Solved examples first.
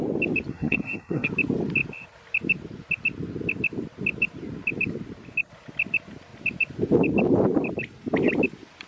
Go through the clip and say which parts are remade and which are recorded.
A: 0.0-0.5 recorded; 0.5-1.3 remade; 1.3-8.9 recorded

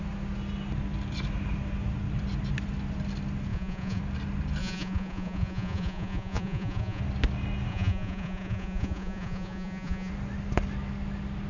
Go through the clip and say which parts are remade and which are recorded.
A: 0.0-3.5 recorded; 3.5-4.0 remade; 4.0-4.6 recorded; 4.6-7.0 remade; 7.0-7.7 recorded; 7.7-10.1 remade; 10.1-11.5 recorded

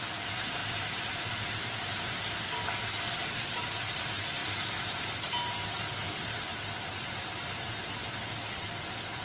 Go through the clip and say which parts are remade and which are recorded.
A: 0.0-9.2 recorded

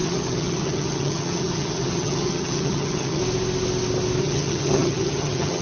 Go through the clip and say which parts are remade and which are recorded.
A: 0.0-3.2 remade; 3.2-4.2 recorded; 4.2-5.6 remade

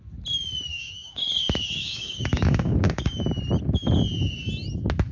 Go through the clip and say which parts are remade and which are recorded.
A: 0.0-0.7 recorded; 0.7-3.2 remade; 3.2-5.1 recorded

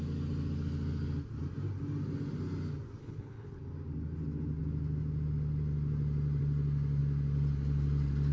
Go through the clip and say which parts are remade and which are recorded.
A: 0.0-3.0 recorded; 3.0-3.6 remade; 3.6-8.3 recorded

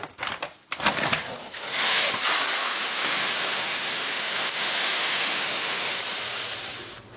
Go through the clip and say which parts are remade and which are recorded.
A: 0.0-1.4 recorded; 1.4-2.1 remade; 2.1-2.6 recorded; 2.6-6.0 remade; 6.0-7.2 recorded